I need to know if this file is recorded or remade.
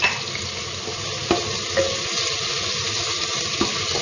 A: recorded